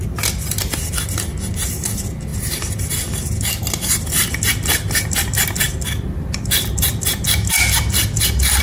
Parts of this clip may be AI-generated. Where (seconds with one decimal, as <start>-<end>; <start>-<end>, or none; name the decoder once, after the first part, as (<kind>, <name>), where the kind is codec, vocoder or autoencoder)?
none